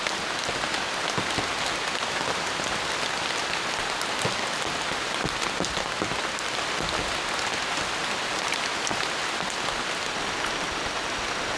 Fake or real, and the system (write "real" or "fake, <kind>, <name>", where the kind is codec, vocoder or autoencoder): real